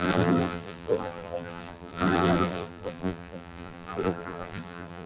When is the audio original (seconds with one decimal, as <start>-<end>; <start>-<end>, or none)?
none